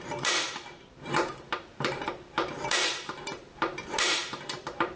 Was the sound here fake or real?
fake